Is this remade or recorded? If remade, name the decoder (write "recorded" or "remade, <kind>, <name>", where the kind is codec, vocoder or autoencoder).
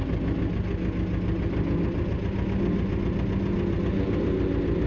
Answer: recorded